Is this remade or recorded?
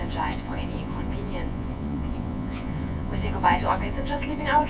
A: remade